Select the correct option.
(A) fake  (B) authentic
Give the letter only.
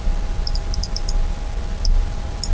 B